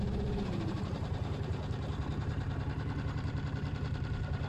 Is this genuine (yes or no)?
no